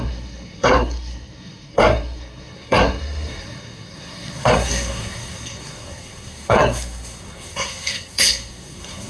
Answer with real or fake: fake